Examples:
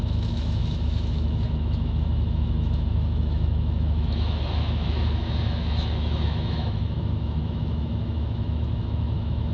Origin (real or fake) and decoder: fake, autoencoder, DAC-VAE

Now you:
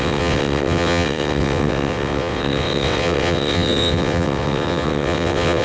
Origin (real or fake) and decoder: fake, vocoder, WaveNeXt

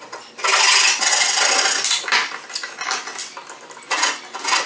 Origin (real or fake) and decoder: real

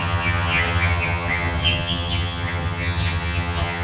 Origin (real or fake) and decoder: fake, vocoder, HiFi-GAN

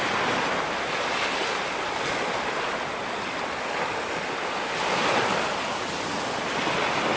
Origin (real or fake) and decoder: real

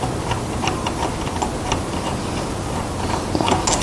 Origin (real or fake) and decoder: real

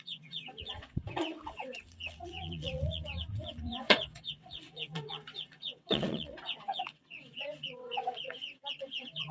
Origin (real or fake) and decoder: fake, vocoder, WaveNeXt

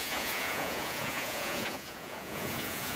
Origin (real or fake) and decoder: fake, vocoder, Vocos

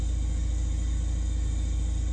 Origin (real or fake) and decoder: real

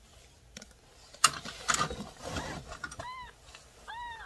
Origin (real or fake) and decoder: real